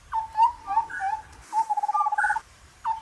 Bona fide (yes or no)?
no